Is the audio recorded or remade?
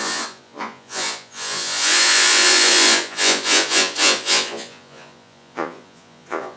remade